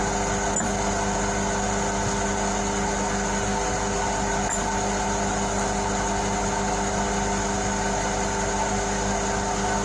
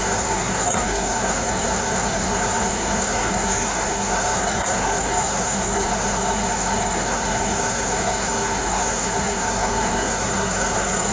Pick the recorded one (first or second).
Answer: first